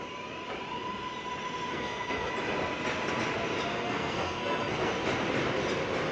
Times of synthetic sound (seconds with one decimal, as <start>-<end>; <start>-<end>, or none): 1.7-2.3; 3.7-4.9